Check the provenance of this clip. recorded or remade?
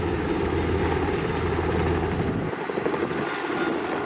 recorded